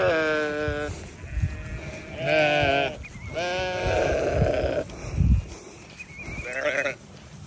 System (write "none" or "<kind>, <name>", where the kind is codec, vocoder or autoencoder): none